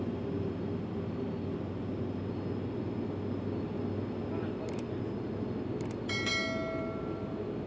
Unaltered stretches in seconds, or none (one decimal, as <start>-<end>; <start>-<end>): 0.0-7.7